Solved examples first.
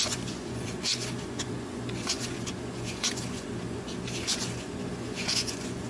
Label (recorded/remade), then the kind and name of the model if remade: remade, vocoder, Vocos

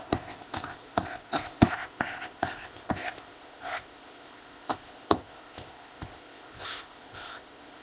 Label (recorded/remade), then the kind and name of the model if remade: remade, codec, ZipCodec